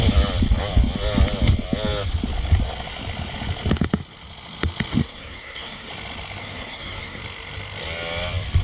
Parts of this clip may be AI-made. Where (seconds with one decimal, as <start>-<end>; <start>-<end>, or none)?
5.0-5.9; 6.4-7.2